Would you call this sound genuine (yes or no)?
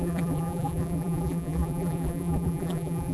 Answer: no